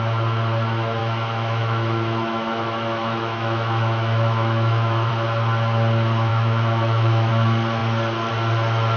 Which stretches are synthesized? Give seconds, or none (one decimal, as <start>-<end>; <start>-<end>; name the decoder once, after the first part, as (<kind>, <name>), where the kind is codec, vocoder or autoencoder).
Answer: 1.0-5.1 (autoencoder, DAC-VAE); 6.3-7.3